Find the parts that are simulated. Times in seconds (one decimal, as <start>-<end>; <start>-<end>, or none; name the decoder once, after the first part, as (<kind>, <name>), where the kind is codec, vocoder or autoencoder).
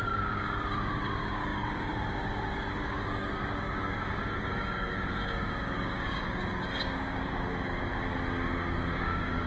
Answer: 0.0-7.9 (codec, DAC); 8.5-9.5